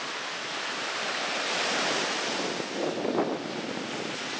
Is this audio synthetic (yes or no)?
no